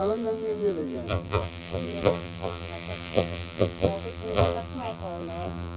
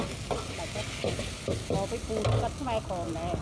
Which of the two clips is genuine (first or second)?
second